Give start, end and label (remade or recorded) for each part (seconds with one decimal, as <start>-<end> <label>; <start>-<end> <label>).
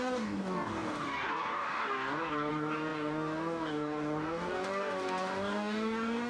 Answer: 0.0-6.3 remade